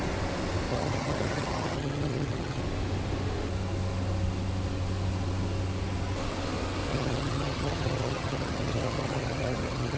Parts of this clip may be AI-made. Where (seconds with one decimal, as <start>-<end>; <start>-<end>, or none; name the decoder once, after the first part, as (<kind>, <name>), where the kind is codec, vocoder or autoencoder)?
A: 0.7-2.6 (vocoder, HiFi-GAN); 6.9-10.0